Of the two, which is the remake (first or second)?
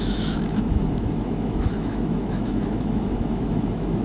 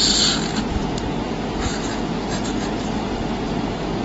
first